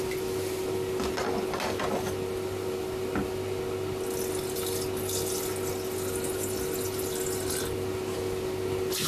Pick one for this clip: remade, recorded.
recorded